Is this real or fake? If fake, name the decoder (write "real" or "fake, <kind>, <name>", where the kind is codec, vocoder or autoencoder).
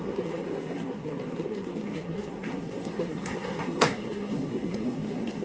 fake, codec, SNAC